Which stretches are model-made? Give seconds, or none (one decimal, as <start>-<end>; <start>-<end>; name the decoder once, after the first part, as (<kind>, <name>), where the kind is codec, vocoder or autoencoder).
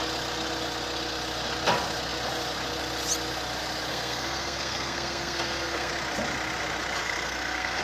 3.9-5.9 (codec, SNAC); 7.0-7.8